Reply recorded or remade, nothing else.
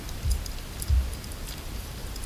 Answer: recorded